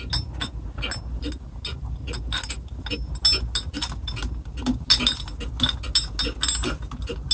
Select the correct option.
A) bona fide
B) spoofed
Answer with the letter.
A